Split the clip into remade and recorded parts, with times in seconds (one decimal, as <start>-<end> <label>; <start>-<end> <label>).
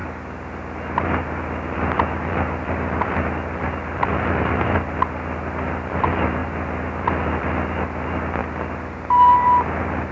0.0-10.1 recorded